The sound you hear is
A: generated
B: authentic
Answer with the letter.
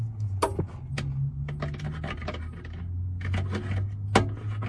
B